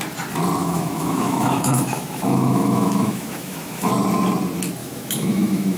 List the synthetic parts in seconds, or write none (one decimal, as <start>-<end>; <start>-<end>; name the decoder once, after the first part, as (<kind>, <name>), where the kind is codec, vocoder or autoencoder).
0.6-3.9 (autoencoder, DAC-VAE); 4.8-5.8